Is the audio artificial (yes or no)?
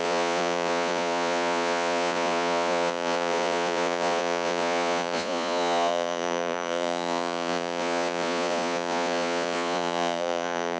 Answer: yes